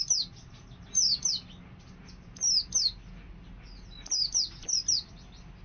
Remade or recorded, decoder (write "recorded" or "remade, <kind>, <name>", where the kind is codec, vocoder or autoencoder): recorded